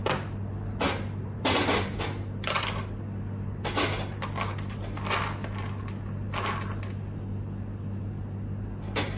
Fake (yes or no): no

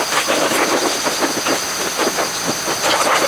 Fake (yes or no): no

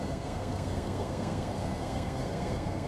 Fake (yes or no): yes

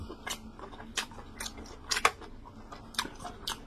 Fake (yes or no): no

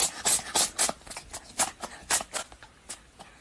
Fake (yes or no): no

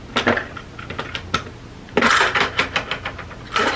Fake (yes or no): no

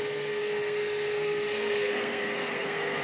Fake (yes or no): yes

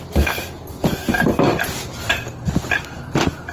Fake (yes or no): no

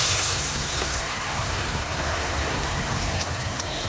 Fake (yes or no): yes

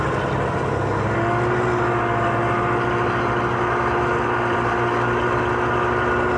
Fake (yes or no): no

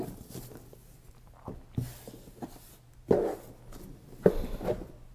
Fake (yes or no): no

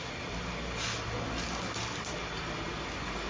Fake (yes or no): no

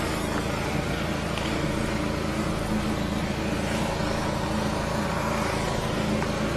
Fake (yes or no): no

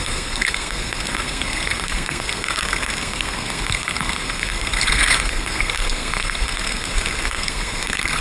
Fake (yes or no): yes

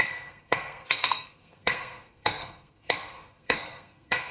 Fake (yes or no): yes